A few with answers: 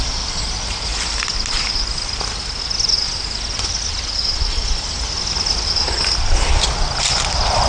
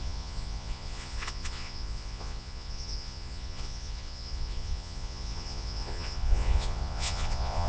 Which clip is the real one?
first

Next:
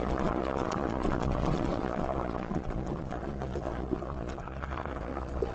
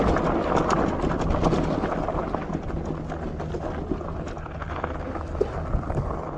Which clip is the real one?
second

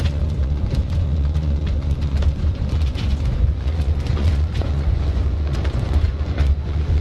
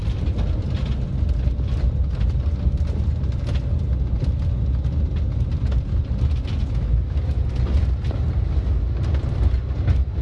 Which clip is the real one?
second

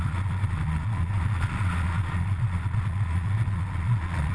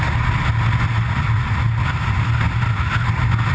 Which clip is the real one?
second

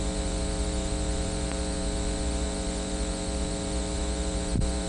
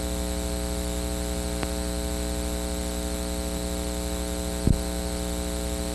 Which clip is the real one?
second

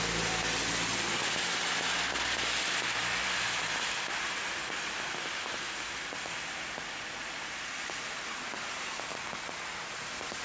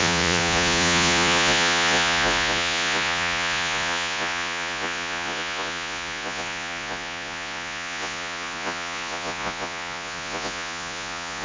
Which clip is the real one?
first